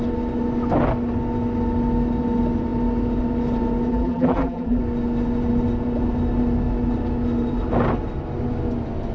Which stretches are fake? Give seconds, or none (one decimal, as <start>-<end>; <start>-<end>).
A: 3.9-4.8